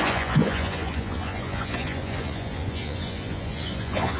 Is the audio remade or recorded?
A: remade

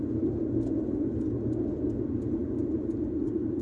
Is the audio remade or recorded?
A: recorded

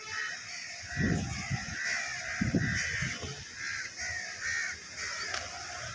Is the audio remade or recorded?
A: recorded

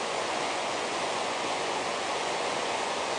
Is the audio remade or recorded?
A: remade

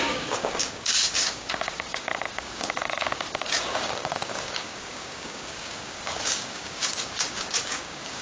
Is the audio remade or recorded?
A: remade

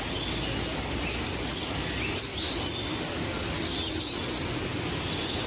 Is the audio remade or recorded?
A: recorded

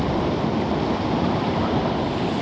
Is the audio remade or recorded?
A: recorded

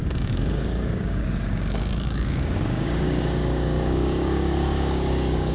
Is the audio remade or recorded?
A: remade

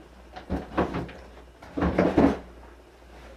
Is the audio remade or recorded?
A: recorded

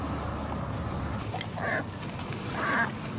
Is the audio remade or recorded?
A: recorded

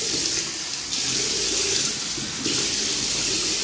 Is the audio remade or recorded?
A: recorded